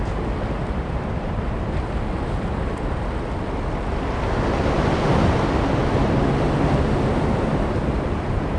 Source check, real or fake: real